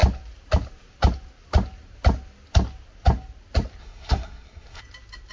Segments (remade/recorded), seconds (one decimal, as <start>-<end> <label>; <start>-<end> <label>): 0.0-3.8 recorded; 3.8-4.8 remade; 4.8-5.3 recorded